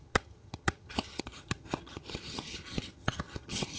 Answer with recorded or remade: remade